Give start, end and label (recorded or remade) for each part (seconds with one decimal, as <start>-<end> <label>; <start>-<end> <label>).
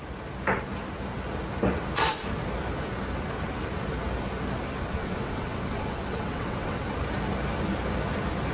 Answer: 0.0-5.0 recorded; 5.0-6.9 remade; 6.9-8.5 recorded